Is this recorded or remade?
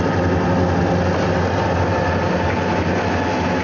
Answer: recorded